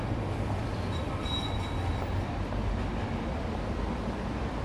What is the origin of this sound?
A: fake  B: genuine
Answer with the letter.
B